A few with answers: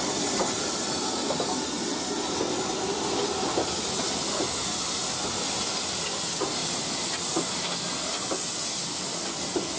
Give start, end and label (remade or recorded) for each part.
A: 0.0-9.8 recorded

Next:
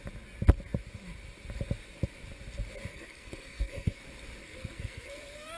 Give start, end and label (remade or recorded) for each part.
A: 0.0-2.9 recorded; 2.9-4.0 remade; 4.0-4.4 recorded; 4.4-5.6 remade

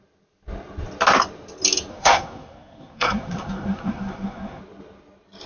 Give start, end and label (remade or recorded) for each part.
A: 0.0-1.9 recorded; 1.9-4.6 remade; 4.6-5.5 recorded

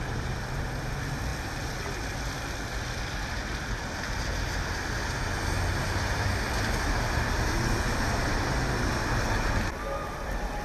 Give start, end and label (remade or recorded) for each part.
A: 0.0-10.6 recorded

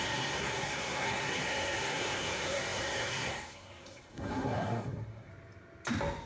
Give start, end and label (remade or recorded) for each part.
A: 0.0-5.3 remade; 5.3-6.3 recorded

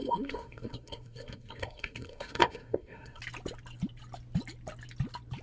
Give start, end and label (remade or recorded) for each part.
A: 0.0-3.2 remade; 3.2-5.4 recorded

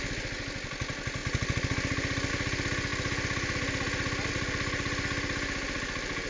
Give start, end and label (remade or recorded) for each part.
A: 0.0-6.3 recorded